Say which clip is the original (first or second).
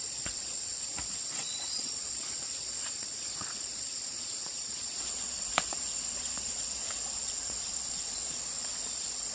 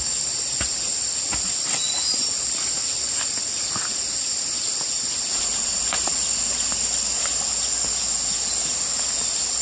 second